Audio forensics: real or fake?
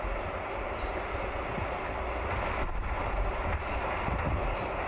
real